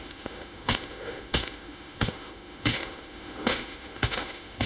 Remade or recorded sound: remade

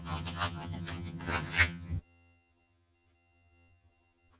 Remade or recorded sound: remade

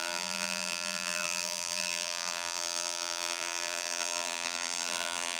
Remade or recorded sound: remade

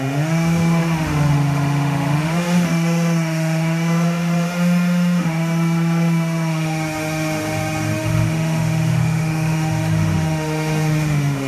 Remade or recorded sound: remade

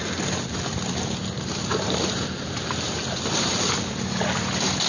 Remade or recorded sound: recorded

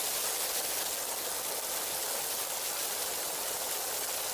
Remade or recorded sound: recorded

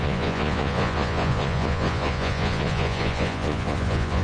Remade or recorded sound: remade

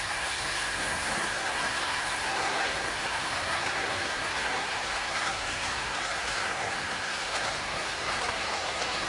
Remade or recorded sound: remade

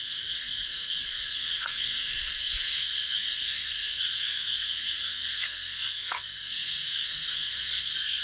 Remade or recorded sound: remade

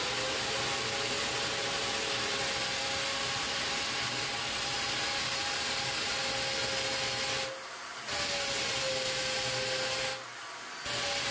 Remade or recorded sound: recorded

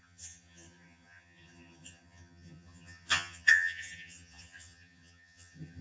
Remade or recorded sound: remade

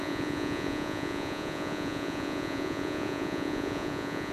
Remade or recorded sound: remade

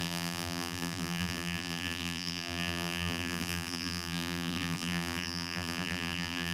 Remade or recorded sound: remade